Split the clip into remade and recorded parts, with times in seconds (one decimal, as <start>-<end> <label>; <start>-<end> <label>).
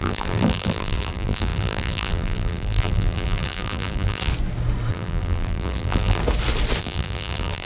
0.0-4.3 remade; 4.3-4.9 recorded; 4.9-6.2 remade; 6.2-6.8 recorded; 6.8-7.7 remade